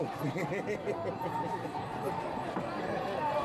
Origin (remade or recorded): recorded